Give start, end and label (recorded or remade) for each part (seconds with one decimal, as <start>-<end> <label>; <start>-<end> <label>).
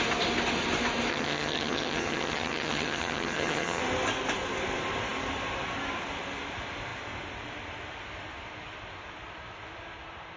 0.0-1.1 recorded; 1.1-3.8 remade; 3.8-10.4 recorded